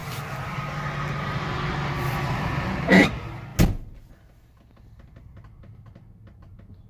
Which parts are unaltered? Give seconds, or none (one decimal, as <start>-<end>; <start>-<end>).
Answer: 0.0-6.9